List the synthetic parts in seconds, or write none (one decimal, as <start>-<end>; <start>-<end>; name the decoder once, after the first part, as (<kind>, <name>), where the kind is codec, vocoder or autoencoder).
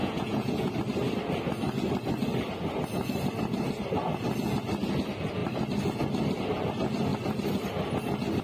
0.0-0.7 (vocoder, Vocos)